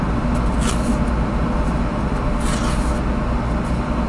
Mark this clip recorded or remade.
recorded